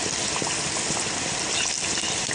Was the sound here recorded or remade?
recorded